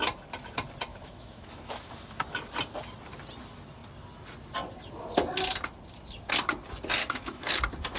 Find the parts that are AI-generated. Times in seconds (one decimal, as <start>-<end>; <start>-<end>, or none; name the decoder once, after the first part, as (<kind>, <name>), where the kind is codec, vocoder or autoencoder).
0.9-1.9 (autoencoder, DAC-VAE); 7.0-7.6